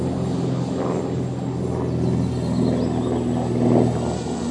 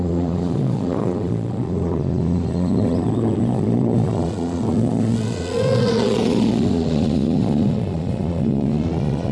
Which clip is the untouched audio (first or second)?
first